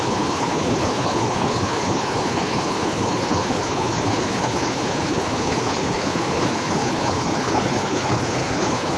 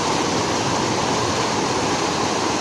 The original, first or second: second